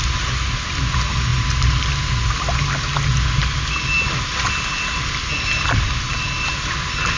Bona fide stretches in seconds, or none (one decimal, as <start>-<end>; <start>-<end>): 0.0-7.2